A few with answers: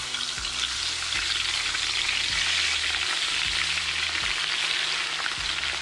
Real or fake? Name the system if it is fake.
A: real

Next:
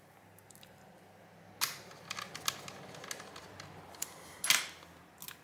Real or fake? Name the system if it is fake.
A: real